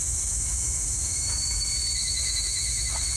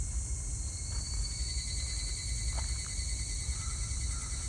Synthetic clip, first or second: first